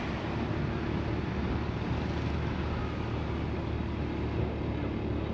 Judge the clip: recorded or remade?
recorded